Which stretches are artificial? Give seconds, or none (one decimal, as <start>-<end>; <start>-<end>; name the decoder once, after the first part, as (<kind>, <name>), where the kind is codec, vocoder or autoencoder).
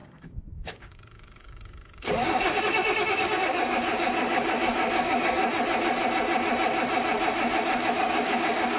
0.0-5.4 (codec, DAC); 8.0-8.8